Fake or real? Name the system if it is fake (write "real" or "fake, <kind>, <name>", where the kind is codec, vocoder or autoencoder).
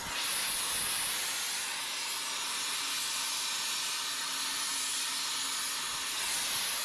real